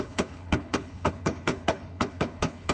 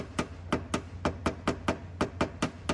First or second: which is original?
second